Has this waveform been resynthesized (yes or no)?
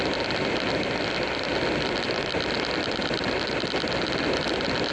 no